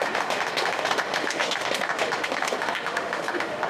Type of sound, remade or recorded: remade